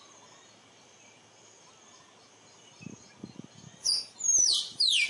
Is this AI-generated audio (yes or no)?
no